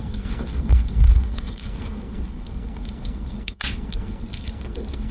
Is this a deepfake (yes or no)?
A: yes